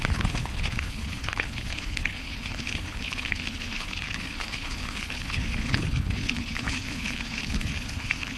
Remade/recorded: remade